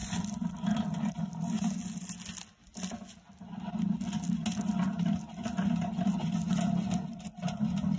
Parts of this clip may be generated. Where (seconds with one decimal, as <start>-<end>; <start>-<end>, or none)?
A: none